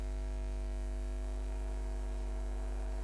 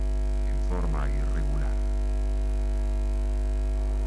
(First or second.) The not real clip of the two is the first